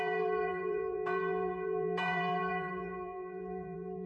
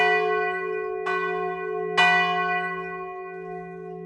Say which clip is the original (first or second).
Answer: second